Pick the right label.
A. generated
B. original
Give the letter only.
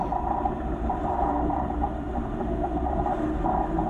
A